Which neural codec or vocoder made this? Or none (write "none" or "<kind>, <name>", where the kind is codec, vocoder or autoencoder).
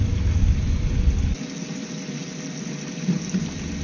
none